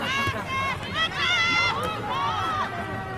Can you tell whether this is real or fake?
real